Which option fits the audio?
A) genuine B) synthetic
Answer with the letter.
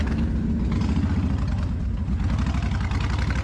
A